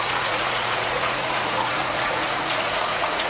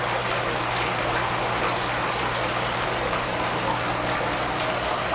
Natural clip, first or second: second